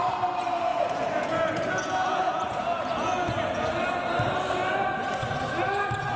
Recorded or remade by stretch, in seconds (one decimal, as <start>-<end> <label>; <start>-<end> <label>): 0.0-0.7 recorded; 0.7-3.7 remade; 3.7-6.2 recorded